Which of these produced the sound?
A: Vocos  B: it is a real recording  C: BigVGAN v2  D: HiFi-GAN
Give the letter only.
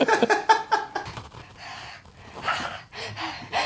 B